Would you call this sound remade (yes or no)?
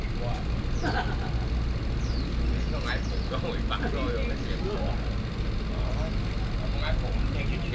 no